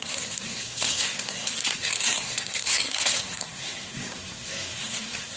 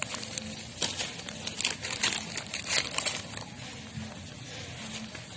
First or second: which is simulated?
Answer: first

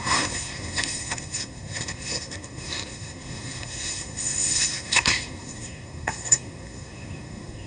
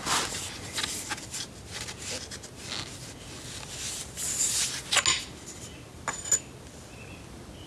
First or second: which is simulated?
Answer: first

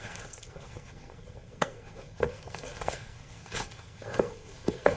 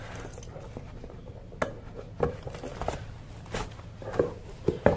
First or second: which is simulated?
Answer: first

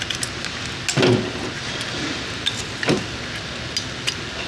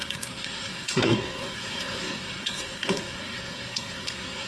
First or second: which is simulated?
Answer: second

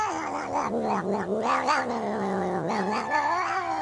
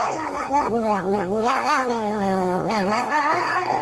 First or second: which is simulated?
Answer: second